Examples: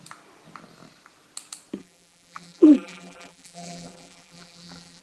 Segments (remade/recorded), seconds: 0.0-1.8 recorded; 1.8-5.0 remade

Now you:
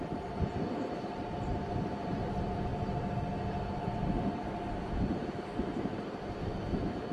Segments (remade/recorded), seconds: 0.0-2.7 remade; 2.7-3.6 recorded; 3.6-7.1 remade

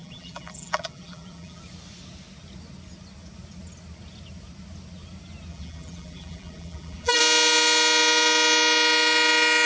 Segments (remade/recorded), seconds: 0.0-1.6 remade; 1.6-5.5 recorded; 5.5-7.2 remade; 7.2-9.7 recorded

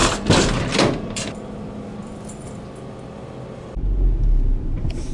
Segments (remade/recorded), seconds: 0.0-1.6 remade; 1.6-2.0 recorded; 2.0-2.8 remade; 2.8-5.1 recorded